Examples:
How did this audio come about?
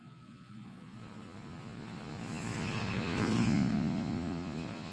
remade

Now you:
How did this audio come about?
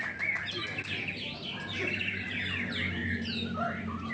recorded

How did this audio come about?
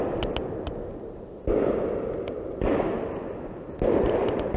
recorded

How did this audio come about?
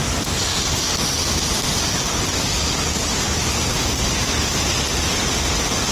recorded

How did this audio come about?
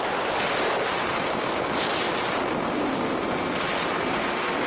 recorded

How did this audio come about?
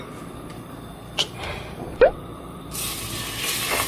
remade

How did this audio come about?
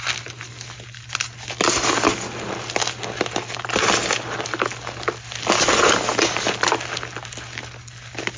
recorded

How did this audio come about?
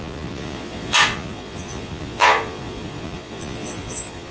remade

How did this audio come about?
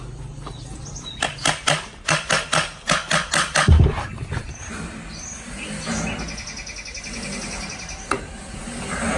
recorded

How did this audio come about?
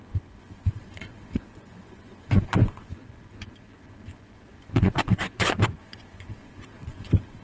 remade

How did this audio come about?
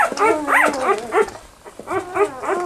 recorded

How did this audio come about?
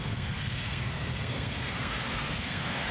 remade